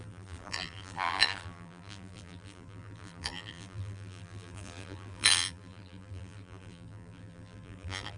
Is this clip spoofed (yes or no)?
yes